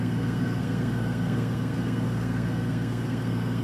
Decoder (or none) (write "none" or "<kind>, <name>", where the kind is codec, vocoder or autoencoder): codec, SNAC